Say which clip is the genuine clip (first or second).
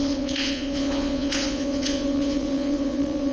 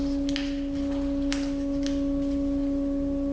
second